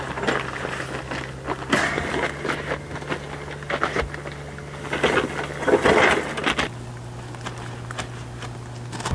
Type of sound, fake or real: real